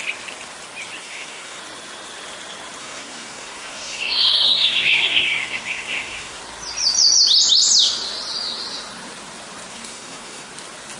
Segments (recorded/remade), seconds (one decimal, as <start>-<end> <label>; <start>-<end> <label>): 0.0-1.0 recorded; 1.0-1.6 remade; 1.6-2.8 recorded; 2.8-6.4 remade; 6.4-9.7 recorded; 9.7-10.5 remade; 10.5-11.0 recorded